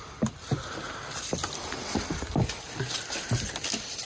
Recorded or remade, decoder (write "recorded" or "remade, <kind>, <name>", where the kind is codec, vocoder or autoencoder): recorded